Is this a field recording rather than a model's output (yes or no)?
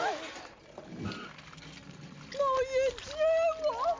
yes